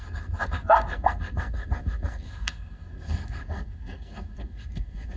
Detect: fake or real fake